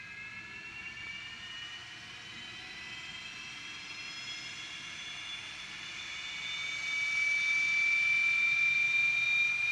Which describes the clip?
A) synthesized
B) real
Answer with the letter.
B